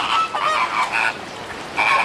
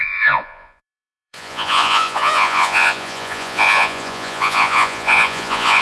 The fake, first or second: second